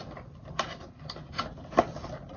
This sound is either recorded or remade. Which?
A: recorded